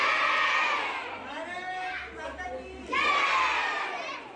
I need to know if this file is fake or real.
real